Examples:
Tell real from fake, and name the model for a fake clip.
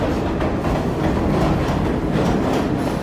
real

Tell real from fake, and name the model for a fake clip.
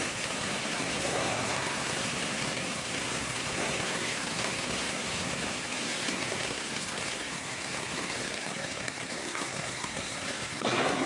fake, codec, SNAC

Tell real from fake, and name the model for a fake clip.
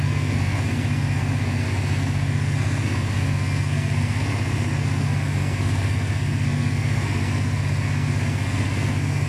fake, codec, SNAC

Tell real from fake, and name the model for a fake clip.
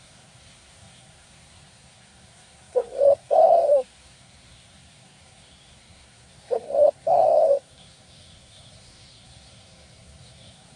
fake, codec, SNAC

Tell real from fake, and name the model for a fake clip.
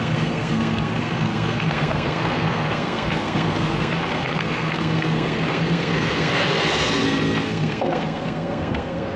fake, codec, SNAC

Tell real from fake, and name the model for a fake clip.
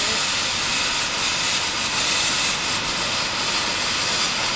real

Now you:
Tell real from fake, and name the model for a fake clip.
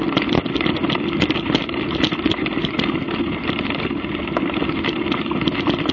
real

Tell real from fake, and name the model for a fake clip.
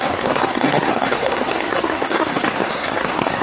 fake, codec, SNAC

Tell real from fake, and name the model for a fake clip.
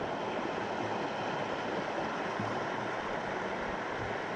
real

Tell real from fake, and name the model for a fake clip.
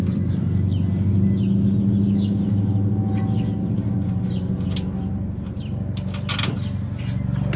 real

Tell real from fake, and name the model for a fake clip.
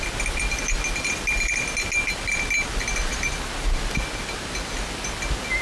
real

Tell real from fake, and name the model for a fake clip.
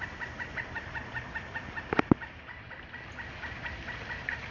real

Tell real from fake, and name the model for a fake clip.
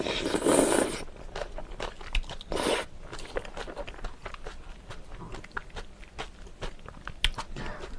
real